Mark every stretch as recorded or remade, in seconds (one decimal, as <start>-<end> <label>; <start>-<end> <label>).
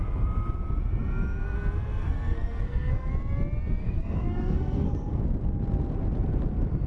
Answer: 0.0-2.0 recorded; 2.0-3.1 remade; 3.1-3.8 recorded; 3.8-5.2 remade; 5.2-6.9 recorded